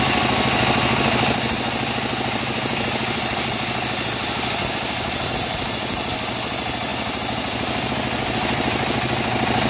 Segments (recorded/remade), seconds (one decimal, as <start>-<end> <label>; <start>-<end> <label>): 0.0-9.7 recorded